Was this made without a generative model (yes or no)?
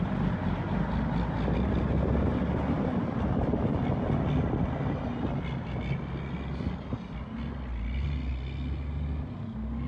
yes